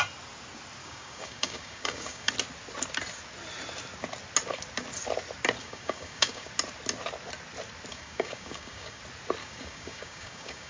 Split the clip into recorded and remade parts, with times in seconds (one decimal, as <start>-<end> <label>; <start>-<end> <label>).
0.0-0.8 recorded; 0.8-2.3 remade; 2.3-5.6 recorded; 5.6-6.5 remade; 6.5-7.9 recorded; 7.9-9.0 remade; 9.0-9.4 recorded; 9.4-10.7 remade

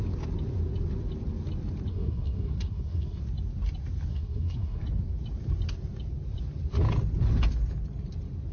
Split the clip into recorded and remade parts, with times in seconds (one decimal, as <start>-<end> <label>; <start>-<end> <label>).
0.0-1.9 recorded; 1.9-3.2 remade; 3.2-4.1 recorded; 4.1-4.8 remade; 4.8-8.5 recorded